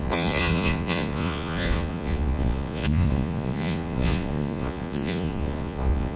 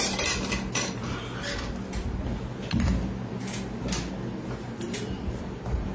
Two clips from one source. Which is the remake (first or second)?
first